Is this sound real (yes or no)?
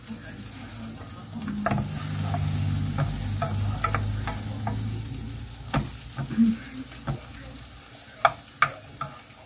yes